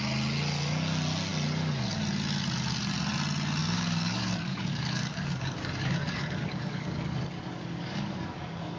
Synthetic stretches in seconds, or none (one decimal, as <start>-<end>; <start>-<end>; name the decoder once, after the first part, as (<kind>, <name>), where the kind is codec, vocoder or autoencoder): 3.6-8.8 (codec, DAC)